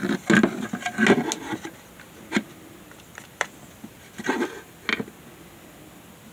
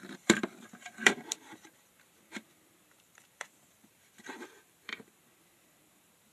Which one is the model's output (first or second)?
second